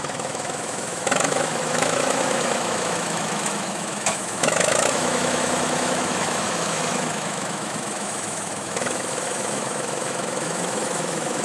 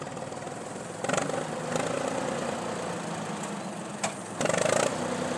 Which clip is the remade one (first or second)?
first